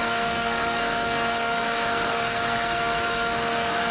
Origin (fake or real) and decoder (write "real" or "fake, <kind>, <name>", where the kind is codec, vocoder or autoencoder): fake, codec, SNAC